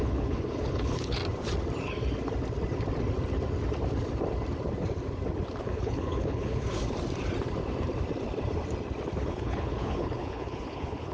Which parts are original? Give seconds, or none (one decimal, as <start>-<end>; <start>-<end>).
1.2-5.6; 6.8-9.2